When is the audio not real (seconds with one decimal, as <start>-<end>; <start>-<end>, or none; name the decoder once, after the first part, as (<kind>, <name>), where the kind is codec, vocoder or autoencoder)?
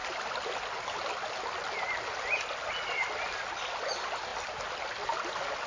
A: none